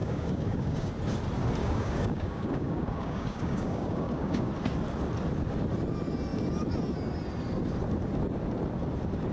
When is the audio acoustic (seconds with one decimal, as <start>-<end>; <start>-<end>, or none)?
0.9-1.6; 4.5-9.3